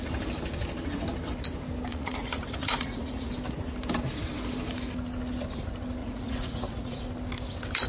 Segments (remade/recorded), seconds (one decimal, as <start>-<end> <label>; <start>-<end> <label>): 0.0-1.9 recorded; 1.9-3.3 remade; 3.3-6.0 recorded; 6.0-7.0 remade; 7.0-7.9 recorded